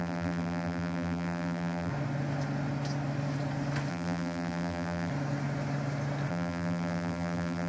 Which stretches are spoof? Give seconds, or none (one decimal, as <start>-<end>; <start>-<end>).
0.0-1.9; 3.9-5.1; 6.3-7.7